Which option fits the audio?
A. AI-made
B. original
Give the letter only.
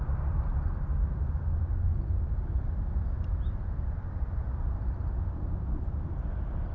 B